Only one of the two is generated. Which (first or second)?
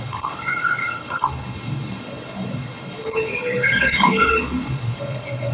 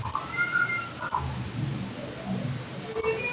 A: first